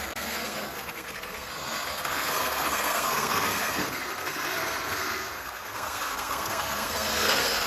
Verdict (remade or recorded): remade